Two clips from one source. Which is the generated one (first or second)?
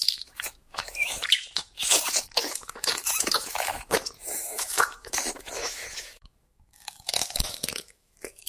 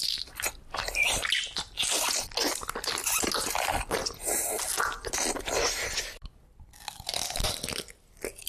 first